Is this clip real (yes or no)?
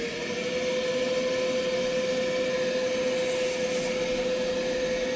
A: yes